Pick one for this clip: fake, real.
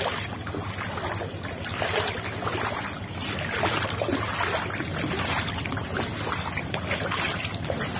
real